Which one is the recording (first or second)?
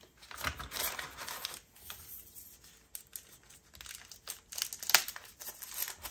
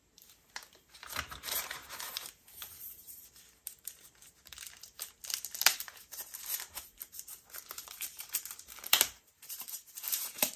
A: first